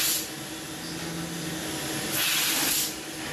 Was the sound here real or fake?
real